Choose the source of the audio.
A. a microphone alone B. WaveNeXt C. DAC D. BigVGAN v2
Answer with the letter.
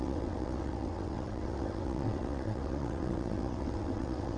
B